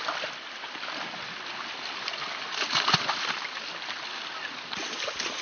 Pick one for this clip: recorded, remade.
recorded